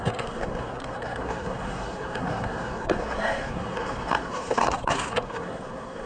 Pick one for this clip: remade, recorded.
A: remade